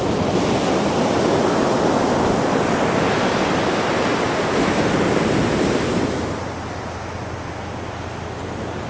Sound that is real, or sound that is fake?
real